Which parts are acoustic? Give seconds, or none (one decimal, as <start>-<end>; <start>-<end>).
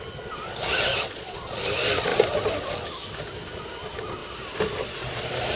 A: 0.0-0.9; 1.6-5.6